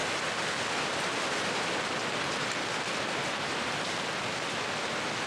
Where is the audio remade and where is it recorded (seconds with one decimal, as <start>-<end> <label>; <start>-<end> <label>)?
0.0-5.3 recorded